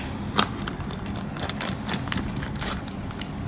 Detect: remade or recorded recorded